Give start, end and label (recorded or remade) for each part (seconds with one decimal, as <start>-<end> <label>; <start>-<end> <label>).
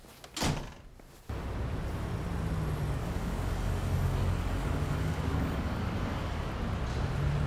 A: 0.0-3.0 recorded; 3.0-6.5 remade; 6.5-7.5 recorded